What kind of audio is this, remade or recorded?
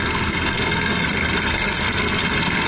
remade